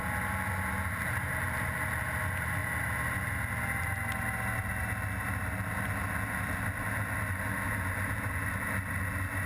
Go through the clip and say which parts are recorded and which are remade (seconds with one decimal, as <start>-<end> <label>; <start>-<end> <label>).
0.0-9.5 recorded